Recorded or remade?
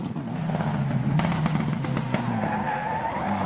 recorded